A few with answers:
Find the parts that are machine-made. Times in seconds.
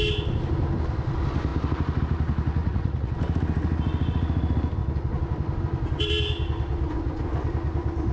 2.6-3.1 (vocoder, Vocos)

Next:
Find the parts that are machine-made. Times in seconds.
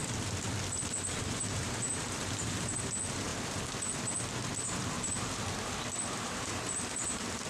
0.9-3.3 (vocoder, BigVGAN v2); 6.1-7.5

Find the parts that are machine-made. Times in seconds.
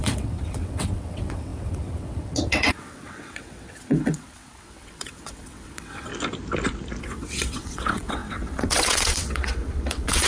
0.0-6.1 (vocoder, WaveNeXt); 7.0-10.3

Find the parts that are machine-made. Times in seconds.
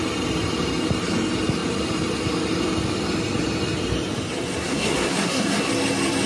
4.6-5.7 (codec, SNAC)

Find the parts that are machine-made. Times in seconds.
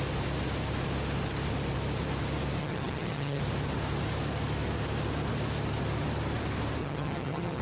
2.6-3.4 (vocoder, HiFi-GAN); 6.8-7.6